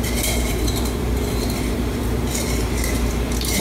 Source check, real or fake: fake